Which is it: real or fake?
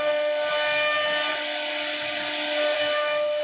real